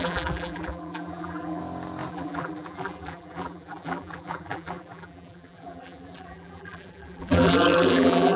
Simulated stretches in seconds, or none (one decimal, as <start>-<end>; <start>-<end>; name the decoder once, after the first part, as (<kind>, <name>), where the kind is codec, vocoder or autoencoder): 0.0-1.6 (vocoder, BigVGAN v2); 2.1-8.4